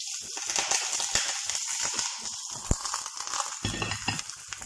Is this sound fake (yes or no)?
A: no